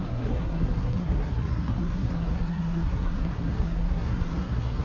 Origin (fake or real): fake